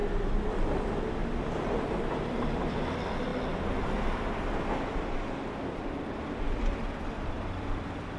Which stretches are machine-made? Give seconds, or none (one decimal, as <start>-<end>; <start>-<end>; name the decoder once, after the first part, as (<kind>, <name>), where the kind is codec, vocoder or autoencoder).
0.5-1.2 (vocoder, BigVGAN v2); 1.7-3.3; 5.8-8.2